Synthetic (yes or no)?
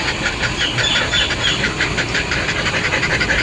no